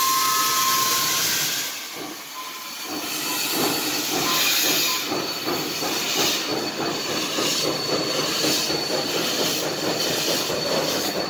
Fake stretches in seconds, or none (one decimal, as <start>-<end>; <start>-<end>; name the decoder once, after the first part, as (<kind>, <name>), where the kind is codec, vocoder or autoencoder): none